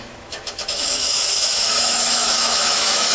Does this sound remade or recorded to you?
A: remade